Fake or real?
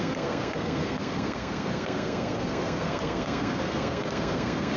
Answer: fake